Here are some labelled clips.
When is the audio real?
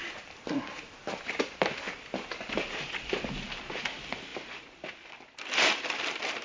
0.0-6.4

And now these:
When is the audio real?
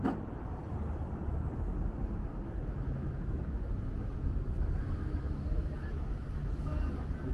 0.0-2.3; 6.7-7.3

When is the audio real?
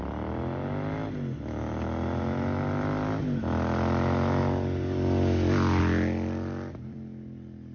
0.0-7.7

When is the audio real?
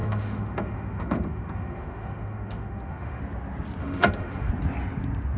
3.2-3.8; 4.5-5.4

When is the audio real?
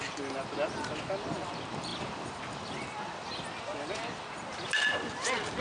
0.0-5.6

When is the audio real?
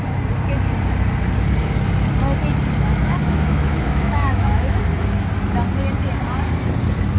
0.0-2.9; 4.8-7.2